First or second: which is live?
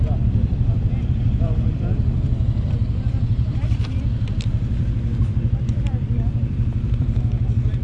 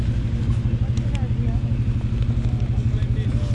second